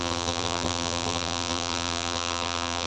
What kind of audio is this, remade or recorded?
remade